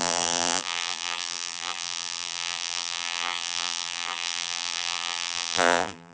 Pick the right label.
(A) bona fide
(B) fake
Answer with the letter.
B